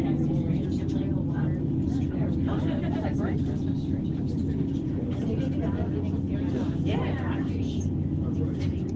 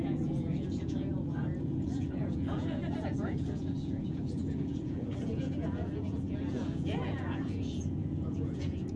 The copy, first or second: second